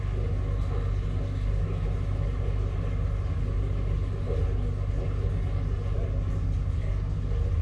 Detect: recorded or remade recorded